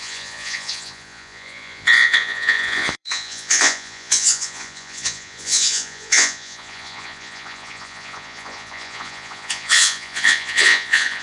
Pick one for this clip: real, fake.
fake